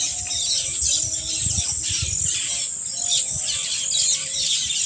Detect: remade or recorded recorded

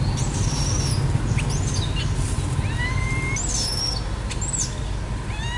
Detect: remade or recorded recorded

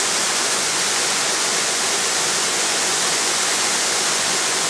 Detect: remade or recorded remade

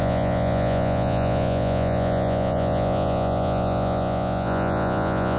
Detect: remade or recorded remade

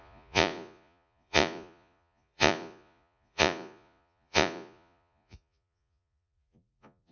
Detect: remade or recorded remade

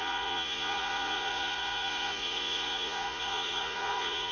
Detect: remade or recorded remade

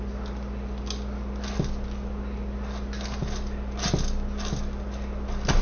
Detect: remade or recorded recorded